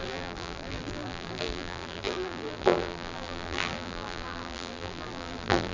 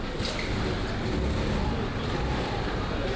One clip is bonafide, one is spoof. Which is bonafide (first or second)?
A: second